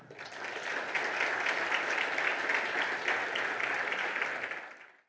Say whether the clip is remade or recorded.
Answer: recorded